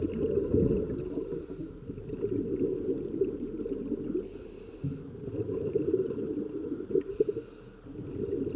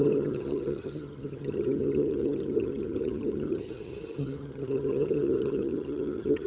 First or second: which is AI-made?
second